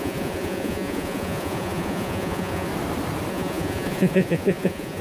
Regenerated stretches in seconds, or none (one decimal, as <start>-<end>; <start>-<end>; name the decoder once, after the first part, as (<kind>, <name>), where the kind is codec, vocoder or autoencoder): 0.0-2.7 (vocoder, Vocos); 3.3-5.0